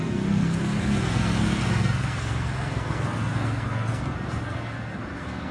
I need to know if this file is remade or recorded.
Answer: remade